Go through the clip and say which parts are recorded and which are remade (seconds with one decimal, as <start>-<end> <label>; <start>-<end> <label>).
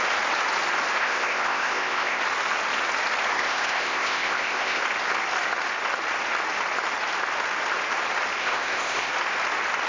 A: 0.0-1.0 recorded; 1.0-2.2 remade; 2.2-3.3 recorded; 3.3-4.8 remade; 4.8-8.4 recorded; 8.4-9.1 remade; 9.1-9.9 recorded